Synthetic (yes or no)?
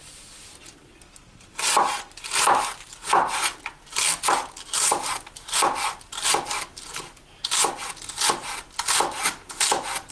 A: no